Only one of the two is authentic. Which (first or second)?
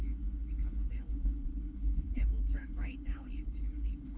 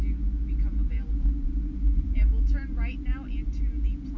second